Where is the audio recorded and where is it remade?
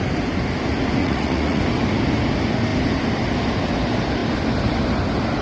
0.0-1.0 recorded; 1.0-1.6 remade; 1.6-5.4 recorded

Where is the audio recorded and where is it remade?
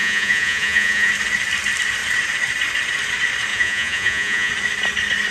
0.0-1.1 remade; 1.1-3.5 recorded; 3.5-4.5 remade; 4.5-5.3 recorded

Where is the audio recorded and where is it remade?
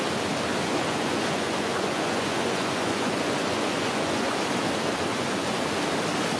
0.0-0.6 recorded; 0.6-4.4 remade; 4.4-5.1 recorded; 5.1-5.6 remade; 5.6-6.4 recorded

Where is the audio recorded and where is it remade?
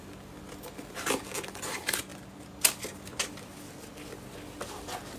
0.0-5.2 recorded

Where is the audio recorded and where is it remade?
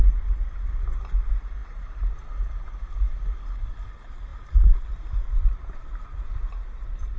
0.0-7.2 recorded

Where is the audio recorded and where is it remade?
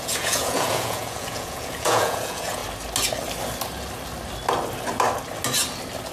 0.0-2.6 remade; 2.6-6.1 recorded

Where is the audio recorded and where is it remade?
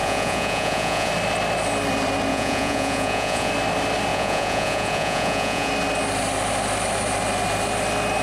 0.0-1.1 remade; 1.1-2.3 recorded; 2.3-3.5 remade; 3.5-4.1 recorded; 4.1-5.7 remade; 5.7-8.2 recorded